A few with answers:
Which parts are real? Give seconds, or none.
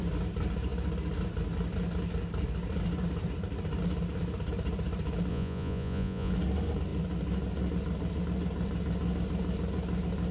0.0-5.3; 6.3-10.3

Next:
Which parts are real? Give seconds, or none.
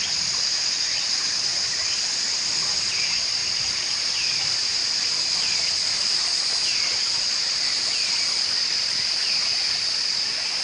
0.0-10.6